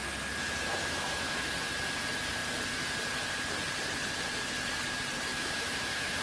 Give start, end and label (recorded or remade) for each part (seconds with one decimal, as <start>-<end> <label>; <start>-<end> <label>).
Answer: 0.0-0.7 recorded; 0.7-1.5 remade; 1.5-5.3 recorded; 5.3-6.2 remade

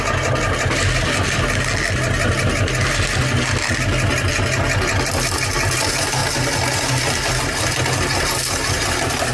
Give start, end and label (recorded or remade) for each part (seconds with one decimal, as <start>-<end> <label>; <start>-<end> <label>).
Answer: 0.0-9.3 recorded

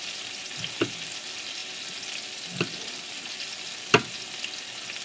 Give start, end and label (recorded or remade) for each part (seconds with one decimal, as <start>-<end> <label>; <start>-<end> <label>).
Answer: 0.0-5.0 recorded